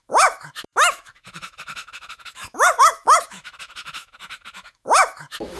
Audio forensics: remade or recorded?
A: remade